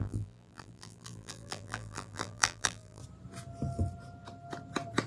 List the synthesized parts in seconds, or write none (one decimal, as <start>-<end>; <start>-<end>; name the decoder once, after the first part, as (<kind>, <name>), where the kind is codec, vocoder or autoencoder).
0.0-3.0 (vocoder, BigVGAN v2)